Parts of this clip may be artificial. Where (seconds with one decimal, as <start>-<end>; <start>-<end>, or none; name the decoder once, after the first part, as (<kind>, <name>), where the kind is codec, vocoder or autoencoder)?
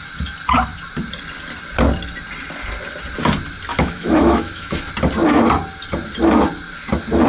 3.7-4.9 (autoencoder, DAC-VAE)